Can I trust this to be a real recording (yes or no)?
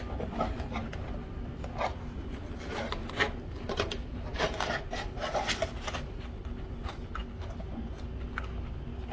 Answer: yes